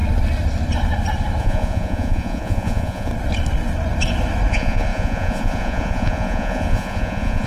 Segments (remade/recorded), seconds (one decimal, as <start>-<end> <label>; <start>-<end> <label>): 0.0-1.4 recorded; 1.4-3.1 remade; 3.1-4.5 recorded; 4.5-7.5 remade